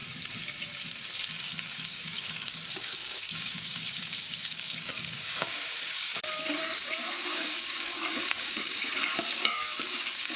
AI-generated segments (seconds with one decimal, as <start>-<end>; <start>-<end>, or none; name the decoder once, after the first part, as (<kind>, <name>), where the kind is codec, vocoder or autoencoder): 1.4-10.4 (codec, DAC)